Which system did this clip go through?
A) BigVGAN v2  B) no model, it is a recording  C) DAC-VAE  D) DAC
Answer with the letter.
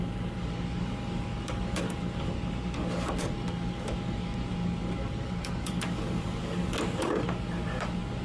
D